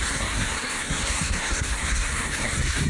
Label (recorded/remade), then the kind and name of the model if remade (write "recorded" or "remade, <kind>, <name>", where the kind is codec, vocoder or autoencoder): remade, codec, SNAC